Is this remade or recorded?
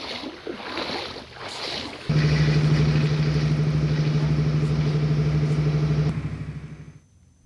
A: recorded